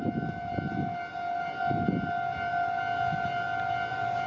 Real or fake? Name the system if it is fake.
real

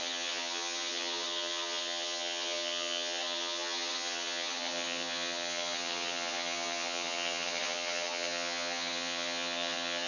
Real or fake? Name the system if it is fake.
fake, vocoder, HiFi-GAN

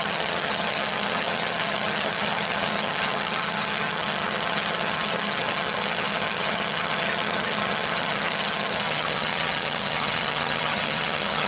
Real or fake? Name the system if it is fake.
fake, vocoder, HiFi-GAN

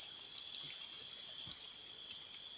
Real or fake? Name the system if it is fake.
real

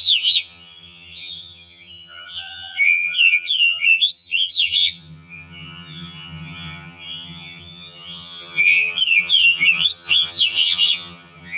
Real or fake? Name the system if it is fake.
fake, vocoder, HiFi-GAN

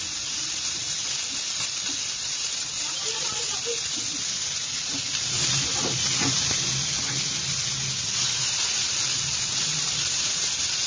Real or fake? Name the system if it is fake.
real